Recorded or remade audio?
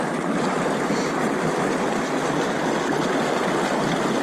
recorded